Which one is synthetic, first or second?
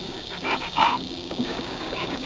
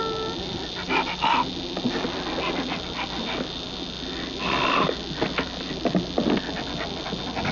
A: first